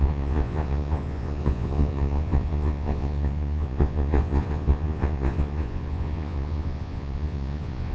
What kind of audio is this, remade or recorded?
remade